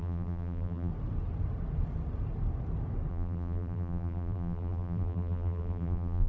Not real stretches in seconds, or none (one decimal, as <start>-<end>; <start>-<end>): 0.0-0.9; 3.1-6.3